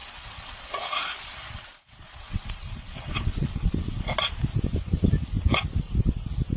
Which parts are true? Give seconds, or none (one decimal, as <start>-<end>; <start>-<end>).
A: 4.0-6.6